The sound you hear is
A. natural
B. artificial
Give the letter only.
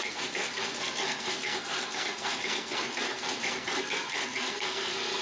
B